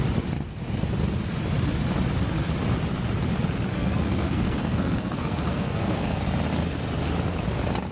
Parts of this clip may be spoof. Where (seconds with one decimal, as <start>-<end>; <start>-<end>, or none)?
3.7-6.2